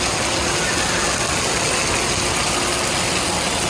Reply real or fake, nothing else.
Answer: real